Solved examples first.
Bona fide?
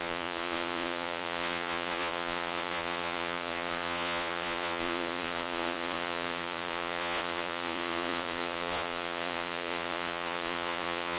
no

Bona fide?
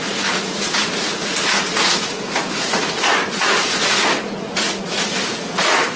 no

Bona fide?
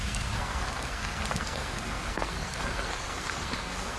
no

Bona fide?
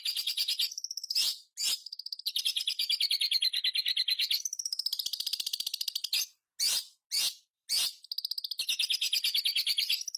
yes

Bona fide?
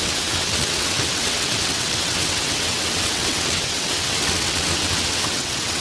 no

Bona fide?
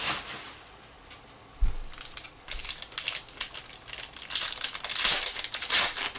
yes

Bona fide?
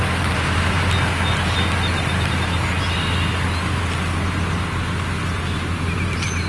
yes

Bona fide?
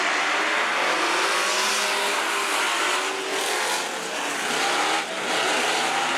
yes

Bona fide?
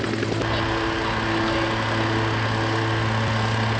yes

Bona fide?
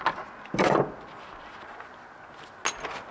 yes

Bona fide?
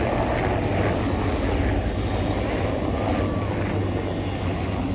yes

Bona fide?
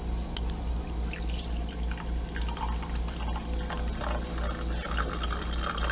yes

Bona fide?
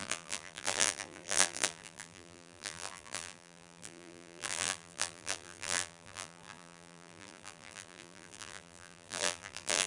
no